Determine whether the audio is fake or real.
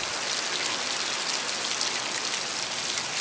real